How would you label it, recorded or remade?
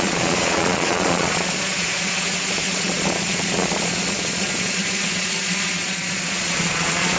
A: remade